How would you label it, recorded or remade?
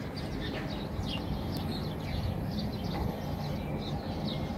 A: recorded